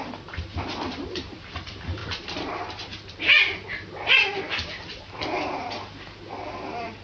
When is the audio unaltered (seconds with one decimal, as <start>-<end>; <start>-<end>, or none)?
2.9-4.9